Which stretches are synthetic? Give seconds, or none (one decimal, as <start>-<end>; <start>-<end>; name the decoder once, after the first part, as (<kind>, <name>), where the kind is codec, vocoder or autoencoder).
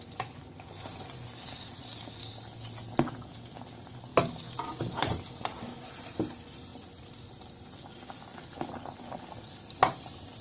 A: 0.0-1.9 (vocoder, BigVGAN v2); 2.9-6.7; 9.3-10.4